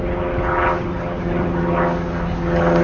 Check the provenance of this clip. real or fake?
real